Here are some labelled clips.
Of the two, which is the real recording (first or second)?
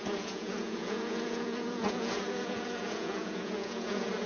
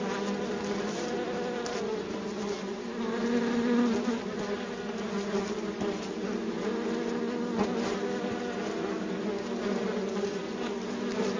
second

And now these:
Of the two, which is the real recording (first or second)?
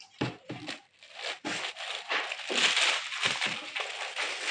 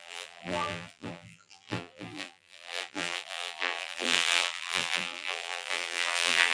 first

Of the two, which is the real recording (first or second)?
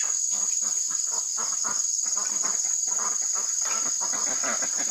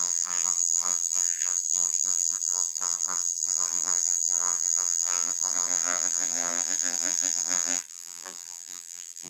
first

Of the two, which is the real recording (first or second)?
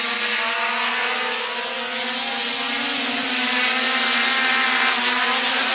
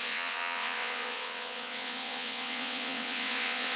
first